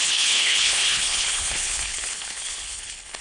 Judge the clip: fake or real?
fake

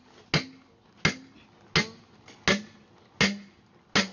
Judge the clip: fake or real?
real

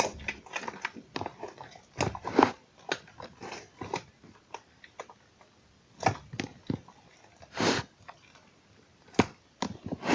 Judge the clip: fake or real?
real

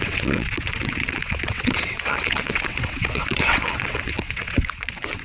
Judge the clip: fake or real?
fake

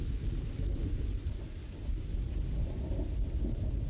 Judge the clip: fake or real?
real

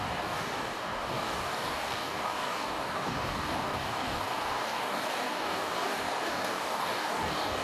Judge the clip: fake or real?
fake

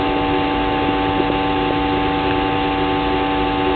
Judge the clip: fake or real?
real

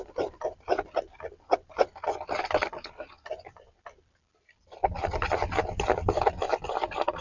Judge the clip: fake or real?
real